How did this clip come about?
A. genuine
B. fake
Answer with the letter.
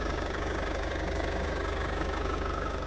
B